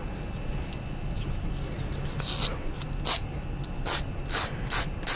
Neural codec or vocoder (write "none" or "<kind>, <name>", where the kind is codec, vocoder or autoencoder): none